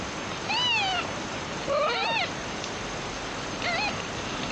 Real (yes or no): yes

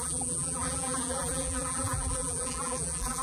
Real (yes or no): no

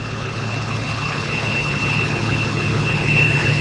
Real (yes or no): no